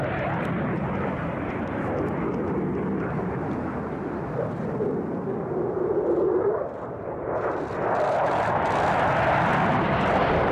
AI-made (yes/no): no